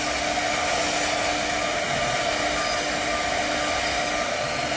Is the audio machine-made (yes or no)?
no